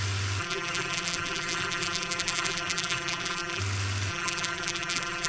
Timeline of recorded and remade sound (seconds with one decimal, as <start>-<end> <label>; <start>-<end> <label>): 0.0-0.4 recorded; 0.4-3.6 remade; 3.6-4.1 recorded; 4.1-5.3 remade